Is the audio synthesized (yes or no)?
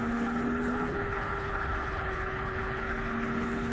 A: yes